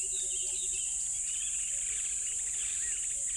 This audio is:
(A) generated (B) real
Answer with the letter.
B